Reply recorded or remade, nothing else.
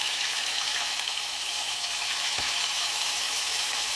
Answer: remade